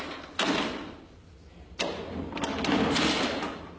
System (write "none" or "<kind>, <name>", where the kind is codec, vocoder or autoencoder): none